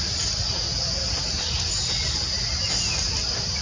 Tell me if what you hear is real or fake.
real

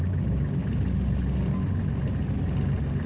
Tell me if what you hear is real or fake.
real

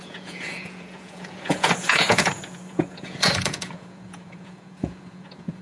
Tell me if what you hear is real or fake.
fake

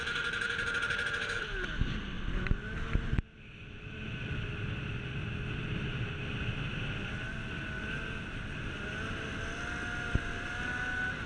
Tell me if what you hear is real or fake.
real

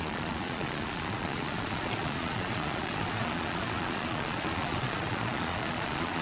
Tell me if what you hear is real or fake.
fake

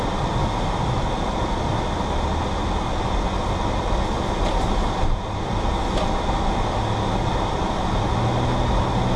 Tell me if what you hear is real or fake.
real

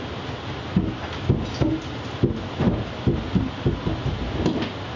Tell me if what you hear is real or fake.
real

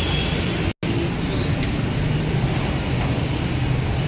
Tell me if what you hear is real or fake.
real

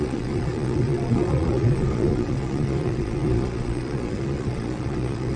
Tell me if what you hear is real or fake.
fake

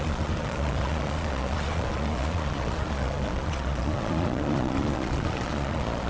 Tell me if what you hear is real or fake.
fake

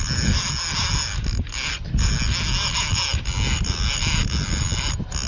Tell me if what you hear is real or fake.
real